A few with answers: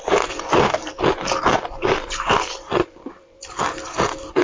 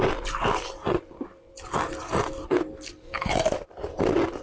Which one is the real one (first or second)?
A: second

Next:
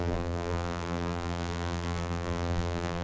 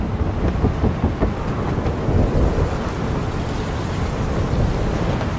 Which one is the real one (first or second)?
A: second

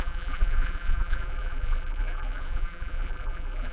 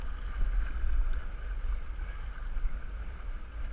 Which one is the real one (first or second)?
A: second